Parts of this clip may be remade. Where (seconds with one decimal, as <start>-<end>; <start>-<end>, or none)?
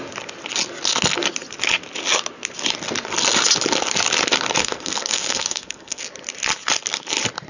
4.6-6.0